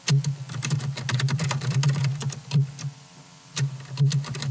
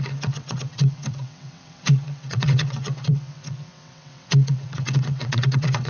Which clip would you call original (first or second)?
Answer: first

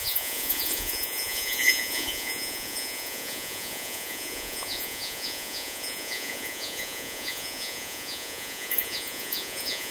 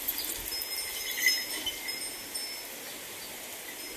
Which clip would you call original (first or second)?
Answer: second